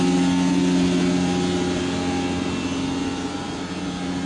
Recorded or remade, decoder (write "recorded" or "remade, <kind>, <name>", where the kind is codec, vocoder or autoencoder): recorded